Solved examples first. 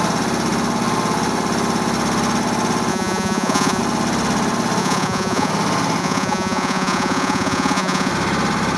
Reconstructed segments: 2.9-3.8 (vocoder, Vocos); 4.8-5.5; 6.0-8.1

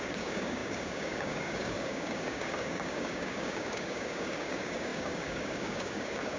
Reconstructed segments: 0.0-6.4 (codec, DAC)

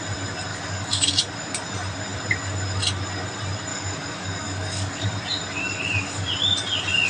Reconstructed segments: 0.5-1.1 (codec, DAC); 3.7-5.1; 5.6-6.3

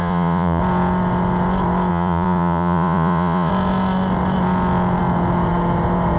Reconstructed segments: 0.0-0.6 (vocoder, Vocos); 1.9-3.5

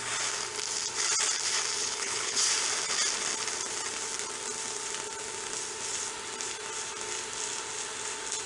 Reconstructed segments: 1.8-2.4 (codec, HILCodec)

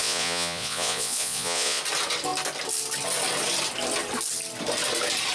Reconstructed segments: 0.0-1.8 (vocoder, Vocos)

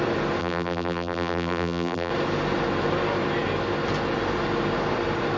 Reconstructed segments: 0.4-2.1 (vocoder, BigVGAN v2)